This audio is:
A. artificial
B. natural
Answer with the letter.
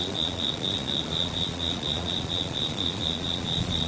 A